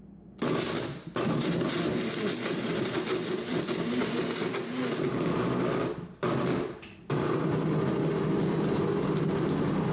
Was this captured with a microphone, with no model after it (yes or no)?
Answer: yes